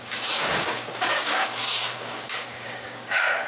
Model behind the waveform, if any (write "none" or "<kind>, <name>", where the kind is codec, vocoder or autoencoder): codec, DAC